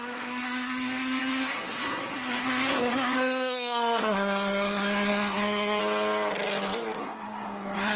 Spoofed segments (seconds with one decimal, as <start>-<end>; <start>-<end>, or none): 0.0-5.8; 7.0-8.0